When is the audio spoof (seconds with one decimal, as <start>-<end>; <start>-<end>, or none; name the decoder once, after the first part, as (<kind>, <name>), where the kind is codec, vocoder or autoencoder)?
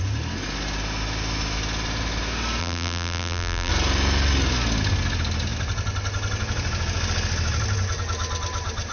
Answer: 2.6-3.7 (vocoder, BigVGAN v2)